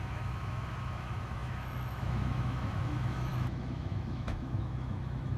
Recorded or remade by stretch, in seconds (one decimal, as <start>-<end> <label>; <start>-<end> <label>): 0.0-5.4 remade